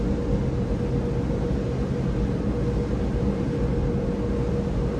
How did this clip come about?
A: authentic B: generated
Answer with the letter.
A